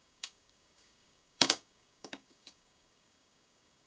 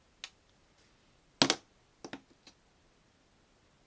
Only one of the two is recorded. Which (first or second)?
second